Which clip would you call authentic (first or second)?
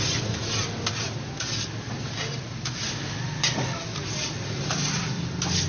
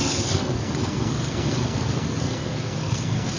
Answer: first